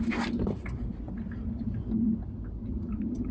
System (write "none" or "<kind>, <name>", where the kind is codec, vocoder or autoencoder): none